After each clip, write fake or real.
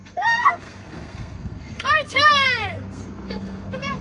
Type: fake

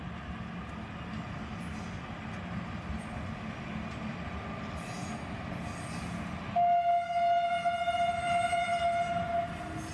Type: real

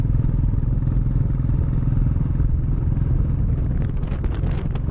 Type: real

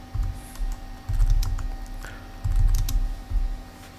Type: real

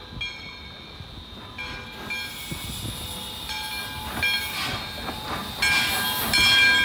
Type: real